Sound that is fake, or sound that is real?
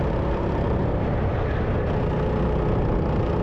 real